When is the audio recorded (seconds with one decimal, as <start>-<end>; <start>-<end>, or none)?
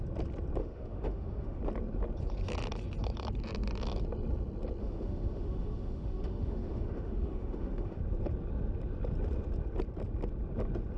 0.0-0.6; 1.6-4.8; 8.0-11.0